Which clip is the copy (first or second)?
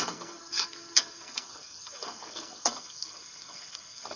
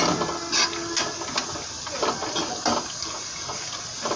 first